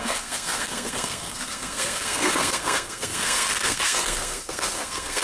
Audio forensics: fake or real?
fake